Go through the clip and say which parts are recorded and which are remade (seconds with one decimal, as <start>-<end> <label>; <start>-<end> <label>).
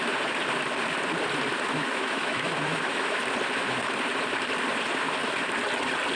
0.0-1.7 recorded; 1.7-3.2 remade; 3.2-6.1 recorded